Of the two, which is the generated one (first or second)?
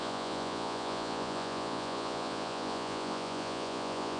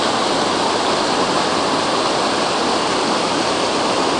first